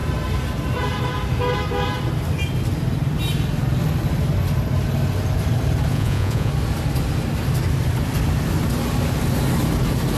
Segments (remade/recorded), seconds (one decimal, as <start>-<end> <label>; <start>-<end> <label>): 0.0-5.9 recorded; 5.9-6.5 remade; 6.5-10.2 recorded